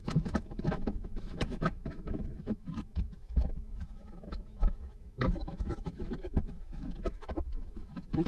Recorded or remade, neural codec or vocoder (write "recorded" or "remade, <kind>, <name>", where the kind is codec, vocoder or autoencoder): remade, autoencoder, DAC-VAE